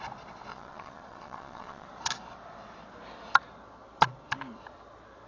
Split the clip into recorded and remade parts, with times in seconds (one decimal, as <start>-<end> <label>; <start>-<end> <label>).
0.0-0.5 recorded; 0.5-1.9 remade; 1.9-5.3 recorded